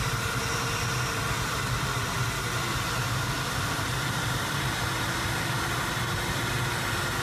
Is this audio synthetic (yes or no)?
no